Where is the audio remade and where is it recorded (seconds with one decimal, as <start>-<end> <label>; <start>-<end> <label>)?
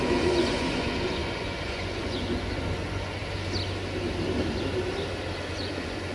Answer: 0.0-3.2 remade; 3.2-5.5 recorded; 5.5-6.1 remade